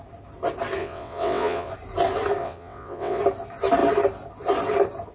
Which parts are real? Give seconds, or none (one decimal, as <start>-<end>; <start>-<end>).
0.0-0.8; 1.7-2.4; 3.2-5.1